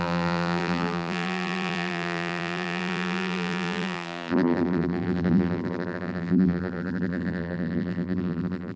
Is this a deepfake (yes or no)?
yes